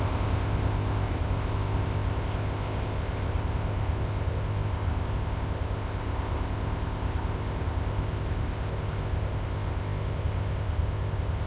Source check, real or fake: fake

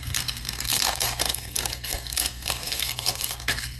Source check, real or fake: fake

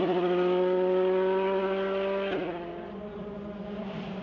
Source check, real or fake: real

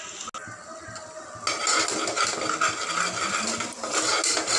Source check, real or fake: real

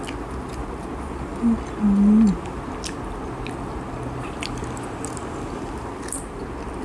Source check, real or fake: real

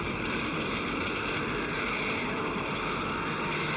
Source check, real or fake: real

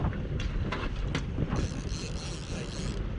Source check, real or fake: real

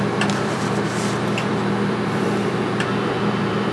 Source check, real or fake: fake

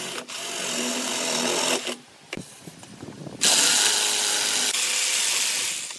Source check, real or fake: real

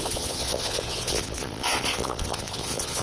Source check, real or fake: fake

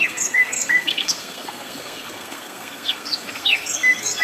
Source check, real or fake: fake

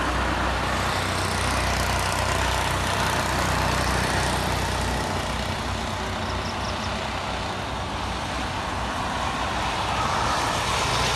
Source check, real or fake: real